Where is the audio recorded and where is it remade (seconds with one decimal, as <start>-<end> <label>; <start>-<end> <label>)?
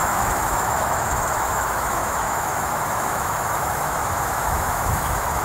0.0-5.4 remade